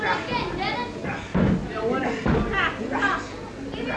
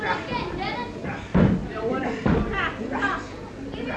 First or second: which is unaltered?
first